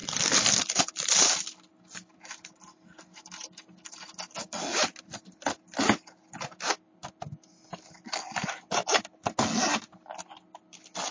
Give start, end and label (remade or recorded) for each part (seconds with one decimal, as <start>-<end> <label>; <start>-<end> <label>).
0.0-11.1 recorded